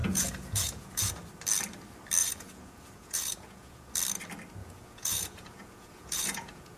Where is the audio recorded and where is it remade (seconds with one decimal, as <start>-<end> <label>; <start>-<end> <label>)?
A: 0.0-1.1 remade; 1.1-2.2 recorded; 2.2-3.9 remade; 3.9-4.6 recorded; 4.6-6.8 remade